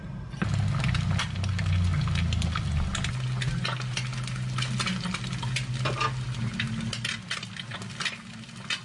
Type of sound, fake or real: real